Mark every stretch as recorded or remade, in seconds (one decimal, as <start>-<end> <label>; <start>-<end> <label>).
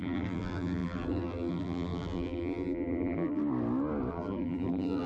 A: 0.0-3.4 remade; 3.4-4.1 recorded; 4.1-5.1 remade